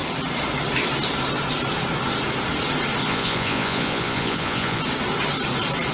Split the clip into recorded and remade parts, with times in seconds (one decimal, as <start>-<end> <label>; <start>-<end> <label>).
0.0-3.0 recorded; 3.0-4.8 remade; 4.8-5.9 recorded

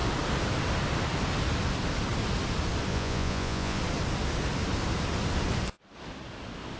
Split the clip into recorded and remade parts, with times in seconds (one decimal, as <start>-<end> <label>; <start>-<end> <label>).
0.0-2.9 recorded; 2.9-3.8 remade; 3.8-6.8 recorded

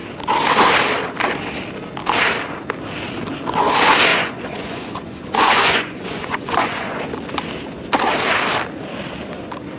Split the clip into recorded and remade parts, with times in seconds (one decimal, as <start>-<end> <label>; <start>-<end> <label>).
0.0-4.1 recorded; 4.1-7.0 remade; 7.0-9.8 recorded

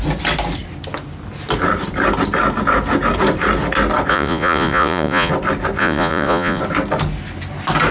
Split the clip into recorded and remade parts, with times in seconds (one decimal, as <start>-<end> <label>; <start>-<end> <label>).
0.0-4.1 recorded; 4.1-5.3 remade; 5.3-5.8 recorded; 5.8-6.6 remade; 6.6-7.9 recorded

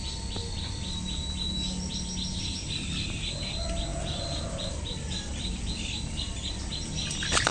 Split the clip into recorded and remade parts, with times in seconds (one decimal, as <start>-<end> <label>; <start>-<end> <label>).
0.0-7.5 recorded

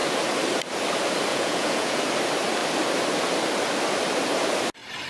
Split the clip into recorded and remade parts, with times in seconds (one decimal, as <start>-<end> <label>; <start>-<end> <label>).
0.0-1.3 recorded; 1.3-2.0 remade; 2.0-5.1 recorded